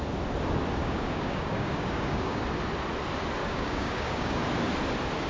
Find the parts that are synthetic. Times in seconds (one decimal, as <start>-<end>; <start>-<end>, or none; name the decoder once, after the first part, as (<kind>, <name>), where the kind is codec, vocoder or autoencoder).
0.8-2.4 (codec, DAC); 3.4-4.4